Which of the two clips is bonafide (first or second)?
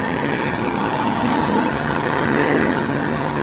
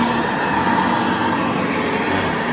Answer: second